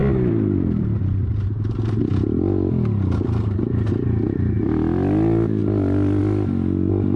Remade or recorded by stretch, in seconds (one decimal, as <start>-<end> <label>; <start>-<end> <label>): 0.0-1.2 remade; 1.2-5.6 recorded; 5.6-6.2 remade; 6.2-7.2 recorded